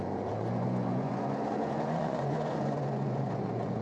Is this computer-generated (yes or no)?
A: yes